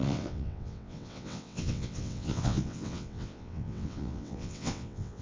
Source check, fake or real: fake